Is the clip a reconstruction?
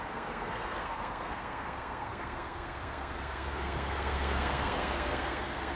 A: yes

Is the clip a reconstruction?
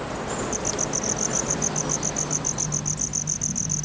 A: no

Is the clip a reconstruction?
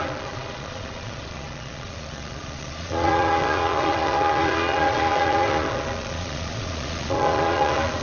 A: yes